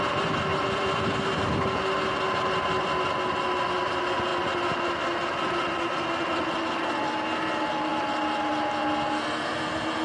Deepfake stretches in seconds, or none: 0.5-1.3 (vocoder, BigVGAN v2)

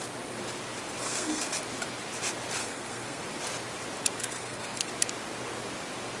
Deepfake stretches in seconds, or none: 1.0-1.6 (codec, SNAC); 2.6-3.2; 4.2-4.9

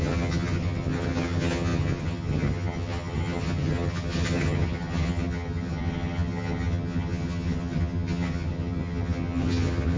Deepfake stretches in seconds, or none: 0.0-10.0 (vocoder, HiFi-GAN)

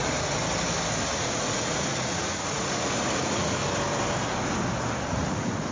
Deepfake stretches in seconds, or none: 0.0-0.4 (vocoder, Vocos); 1.2-3.6; 5.1-5.7

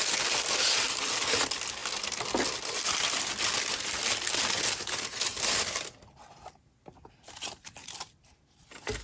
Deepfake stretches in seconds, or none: none

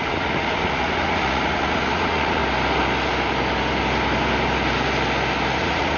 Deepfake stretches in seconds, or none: 0.0-2.4 (vocoder, Vocos); 5.6-6.0